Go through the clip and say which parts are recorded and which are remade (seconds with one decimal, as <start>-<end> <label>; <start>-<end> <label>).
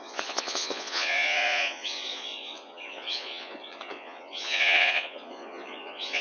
0.0-6.2 remade